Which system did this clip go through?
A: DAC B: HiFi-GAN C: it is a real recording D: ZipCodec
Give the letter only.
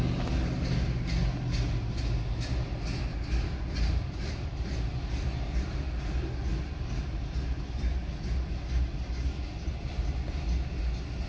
C